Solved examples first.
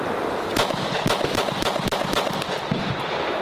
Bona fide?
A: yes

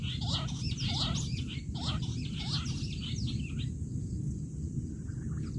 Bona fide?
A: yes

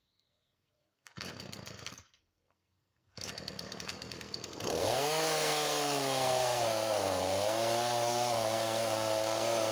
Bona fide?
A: no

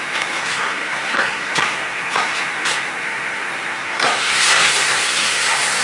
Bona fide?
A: no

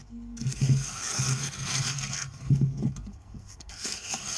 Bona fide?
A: no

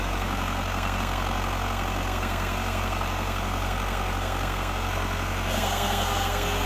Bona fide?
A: no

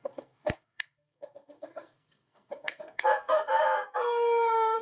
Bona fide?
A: no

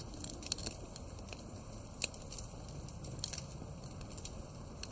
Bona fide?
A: yes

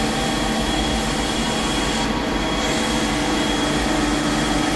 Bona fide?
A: yes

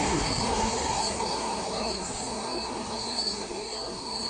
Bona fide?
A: no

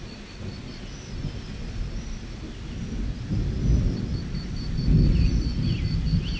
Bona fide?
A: yes